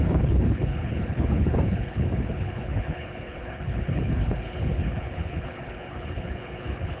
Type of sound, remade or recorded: remade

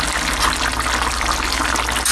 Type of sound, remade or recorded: recorded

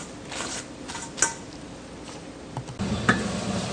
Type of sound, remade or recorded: recorded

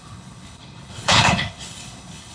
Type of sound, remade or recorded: remade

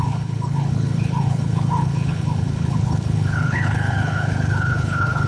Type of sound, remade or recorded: remade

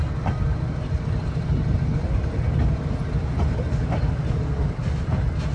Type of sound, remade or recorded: recorded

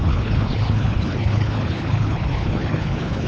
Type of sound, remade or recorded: remade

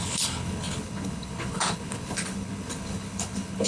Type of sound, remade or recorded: remade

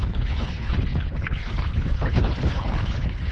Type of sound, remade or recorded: remade